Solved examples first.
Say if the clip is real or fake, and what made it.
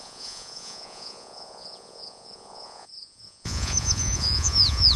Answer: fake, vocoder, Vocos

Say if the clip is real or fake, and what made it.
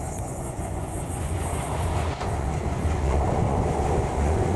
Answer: fake, vocoder, Vocos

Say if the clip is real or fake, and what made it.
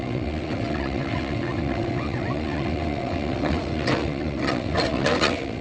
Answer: fake, vocoder, WaveNeXt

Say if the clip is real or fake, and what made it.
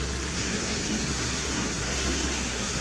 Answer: fake, codec, SNAC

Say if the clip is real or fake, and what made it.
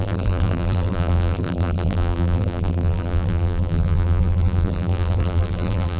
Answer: fake, vocoder, BigVGAN v2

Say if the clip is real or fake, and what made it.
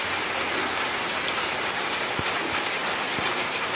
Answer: real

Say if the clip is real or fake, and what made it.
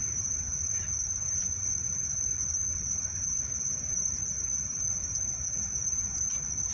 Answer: fake, vocoder, BigVGAN v2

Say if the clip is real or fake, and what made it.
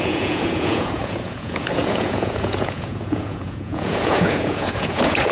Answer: fake, vocoder, Vocos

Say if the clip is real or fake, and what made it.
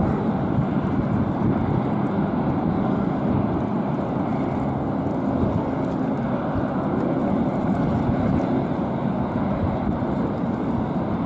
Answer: real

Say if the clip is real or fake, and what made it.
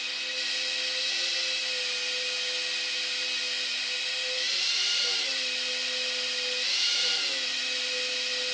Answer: real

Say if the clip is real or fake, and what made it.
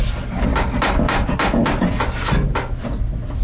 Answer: real